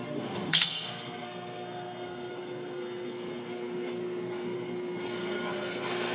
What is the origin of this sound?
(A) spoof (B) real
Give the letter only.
A